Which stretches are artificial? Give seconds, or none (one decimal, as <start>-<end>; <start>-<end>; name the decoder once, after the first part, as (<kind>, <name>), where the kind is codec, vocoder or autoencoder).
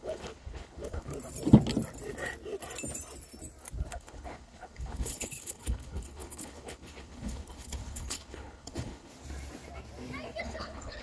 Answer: 0.0-1.1 (codec, HILCodec); 3.9-9.1; 10.4-11.0